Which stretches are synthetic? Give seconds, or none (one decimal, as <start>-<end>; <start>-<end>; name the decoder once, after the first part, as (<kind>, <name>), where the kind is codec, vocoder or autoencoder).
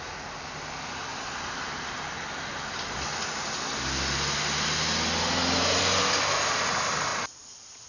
none